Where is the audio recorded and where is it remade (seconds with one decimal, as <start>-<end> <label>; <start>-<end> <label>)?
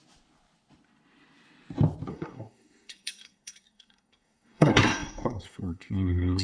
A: 0.0-2.1 recorded; 2.1-6.4 remade